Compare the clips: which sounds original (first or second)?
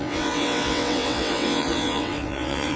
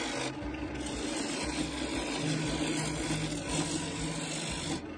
second